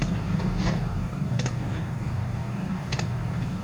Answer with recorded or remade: remade